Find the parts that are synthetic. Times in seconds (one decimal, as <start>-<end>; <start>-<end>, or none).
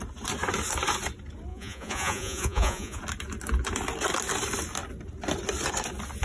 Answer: 1.5-3.0